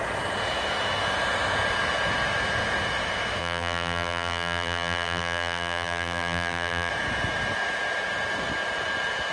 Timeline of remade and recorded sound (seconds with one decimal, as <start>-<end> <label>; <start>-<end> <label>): 0.0-3.4 recorded; 3.4-6.9 remade; 6.9-9.3 recorded